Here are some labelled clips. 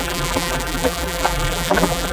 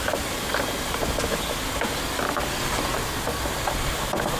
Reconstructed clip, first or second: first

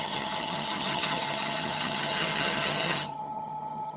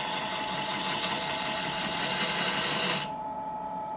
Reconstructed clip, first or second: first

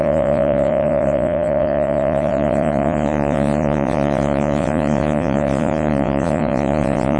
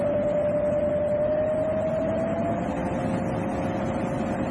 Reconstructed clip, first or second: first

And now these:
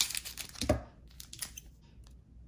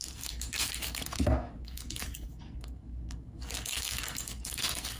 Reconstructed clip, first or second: second